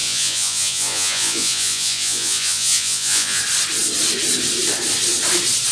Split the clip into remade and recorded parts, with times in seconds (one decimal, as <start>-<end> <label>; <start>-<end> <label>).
0.0-3.4 remade; 3.4-5.7 recorded